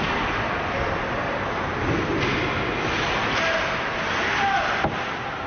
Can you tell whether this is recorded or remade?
recorded